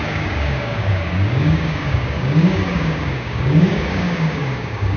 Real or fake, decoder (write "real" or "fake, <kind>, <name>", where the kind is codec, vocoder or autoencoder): fake, codec, DAC